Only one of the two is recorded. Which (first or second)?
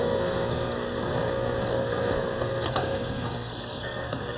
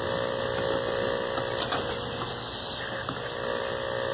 second